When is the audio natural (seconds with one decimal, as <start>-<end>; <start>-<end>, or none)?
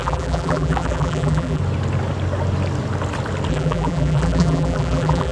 1.6-3.5